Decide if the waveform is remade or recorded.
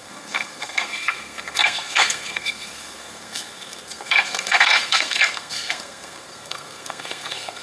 remade